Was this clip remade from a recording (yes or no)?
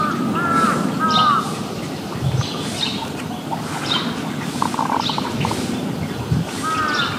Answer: no